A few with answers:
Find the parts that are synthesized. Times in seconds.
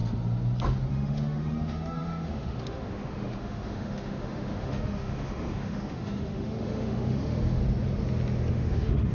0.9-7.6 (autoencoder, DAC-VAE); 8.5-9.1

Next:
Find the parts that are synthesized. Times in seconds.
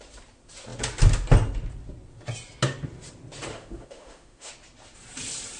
3.5-4.5 (autoencoder, DAC-VAE)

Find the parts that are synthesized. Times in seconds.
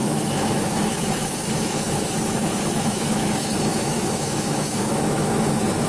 0.0-5.9 (autoencoder, DAC-VAE)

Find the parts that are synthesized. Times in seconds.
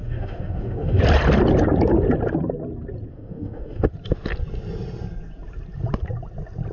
0.0-1.0 (autoencoder, DAC-VAE); 3.1-3.9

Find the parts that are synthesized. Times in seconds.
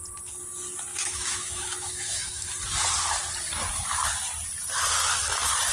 0.9-2.5 (autoencoder, DAC-VAE)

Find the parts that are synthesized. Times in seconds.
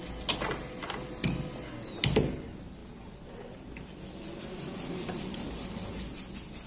none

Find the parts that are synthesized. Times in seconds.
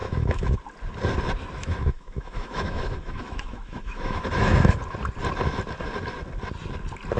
0.0-0.6 (autoencoder, DAC-VAE); 1.6-4.8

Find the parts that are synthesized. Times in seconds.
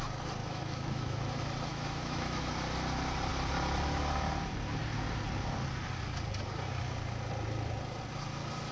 0.4-1.2 (autoencoder, DAC-VAE); 1.7-2.4